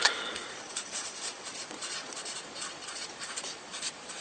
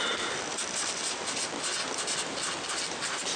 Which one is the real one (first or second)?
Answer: second